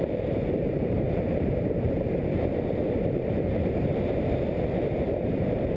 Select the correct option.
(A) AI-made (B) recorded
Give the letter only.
A